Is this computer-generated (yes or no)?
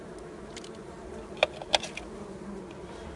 no